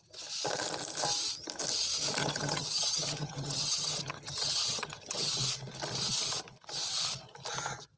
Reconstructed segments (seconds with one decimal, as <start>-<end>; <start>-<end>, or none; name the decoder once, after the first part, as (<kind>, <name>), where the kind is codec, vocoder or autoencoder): 2.2-5.3 (vocoder, HiFi-GAN)